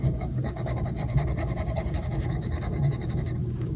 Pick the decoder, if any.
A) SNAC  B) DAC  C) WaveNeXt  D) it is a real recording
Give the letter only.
B